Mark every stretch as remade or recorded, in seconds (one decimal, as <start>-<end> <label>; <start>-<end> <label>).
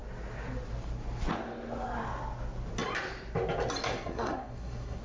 0.0-3.9 recorded; 3.9-5.0 remade